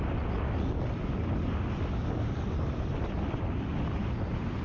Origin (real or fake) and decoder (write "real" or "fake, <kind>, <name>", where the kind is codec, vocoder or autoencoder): real